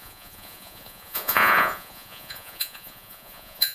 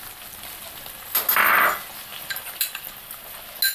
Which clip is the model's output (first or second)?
first